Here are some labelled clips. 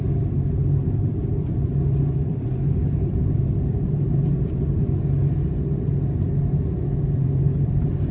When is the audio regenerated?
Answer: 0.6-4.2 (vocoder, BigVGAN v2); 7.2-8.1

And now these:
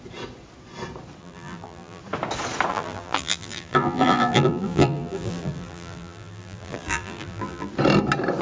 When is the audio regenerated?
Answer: 1.2-2.0 (vocoder, BigVGAN v2); 2.7-7.7

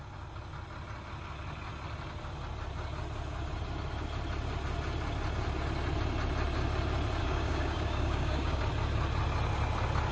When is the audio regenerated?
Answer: 7.2-8.6 (codec, DAC)